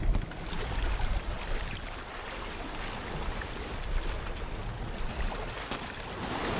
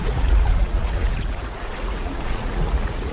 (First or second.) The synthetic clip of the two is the second